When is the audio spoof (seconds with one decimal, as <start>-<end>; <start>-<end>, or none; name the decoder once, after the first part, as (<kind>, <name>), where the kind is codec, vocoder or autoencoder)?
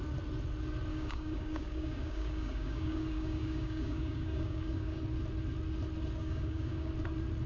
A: 0.9-5.0 (codec, DAC); 6.2-6.9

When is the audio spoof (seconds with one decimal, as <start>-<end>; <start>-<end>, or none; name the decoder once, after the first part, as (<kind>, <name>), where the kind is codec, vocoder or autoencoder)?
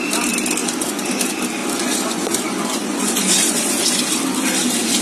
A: 0.6-1.1 (vocoder, Vocos); 1.6-4.0